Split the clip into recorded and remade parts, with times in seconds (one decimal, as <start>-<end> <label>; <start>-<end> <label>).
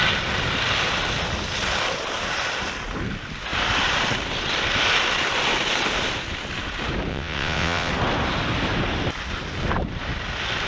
0.0-7.1 recorded; 7.1-7.9 remade; 7.9-10.7 recorded